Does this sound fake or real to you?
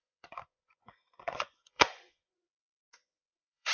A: fake